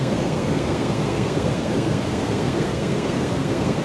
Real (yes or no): no